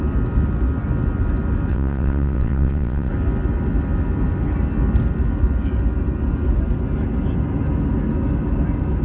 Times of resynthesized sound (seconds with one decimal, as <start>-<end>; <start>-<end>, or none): 1.7-3.1